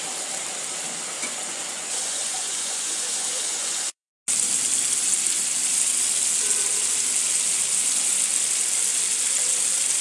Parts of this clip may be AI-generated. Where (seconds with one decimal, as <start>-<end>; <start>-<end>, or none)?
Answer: 1.2-4.1